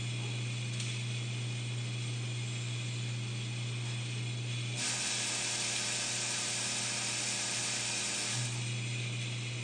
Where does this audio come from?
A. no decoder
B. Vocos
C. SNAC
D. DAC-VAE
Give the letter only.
A